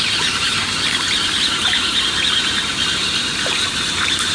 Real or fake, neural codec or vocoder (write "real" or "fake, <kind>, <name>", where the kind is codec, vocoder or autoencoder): real